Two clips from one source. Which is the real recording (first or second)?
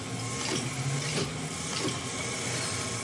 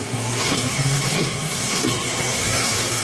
first